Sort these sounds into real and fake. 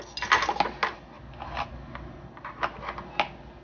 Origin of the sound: real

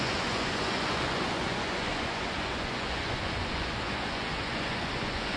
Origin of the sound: fake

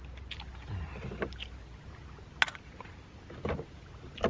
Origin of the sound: real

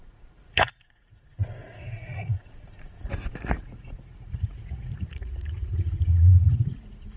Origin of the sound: fake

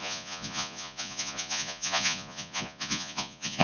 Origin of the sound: fake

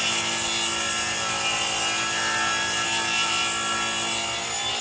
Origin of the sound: real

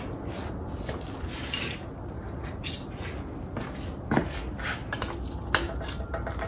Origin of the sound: real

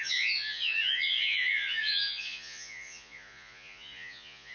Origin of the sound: fake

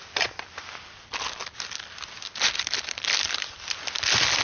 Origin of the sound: real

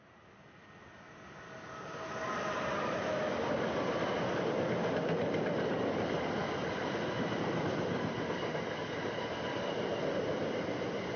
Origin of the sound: real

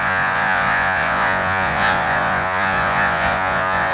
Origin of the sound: fake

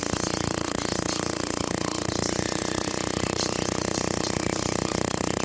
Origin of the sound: fake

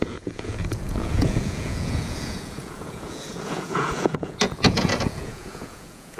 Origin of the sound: fake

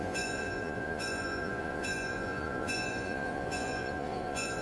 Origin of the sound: fake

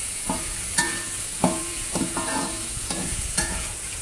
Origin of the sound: fake